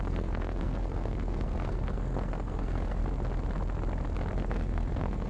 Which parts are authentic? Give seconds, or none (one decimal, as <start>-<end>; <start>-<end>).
3.0-4.4